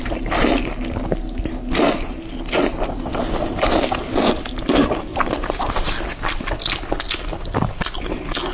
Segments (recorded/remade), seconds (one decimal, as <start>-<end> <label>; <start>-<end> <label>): 0.0-5.1 recorded; 5.1-5.9 remade; 5.9-8.5 recorded

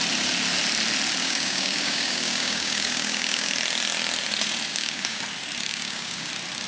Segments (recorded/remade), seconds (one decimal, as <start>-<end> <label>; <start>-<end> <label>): 0.0-1.2 recorded; 1.2-3.5 remade; 3.5-4.7 recorded; 4.7-5.2 remade; 5.2-5.7 recorded; 5.7-6.3 remade; 6.3-6.7 recorded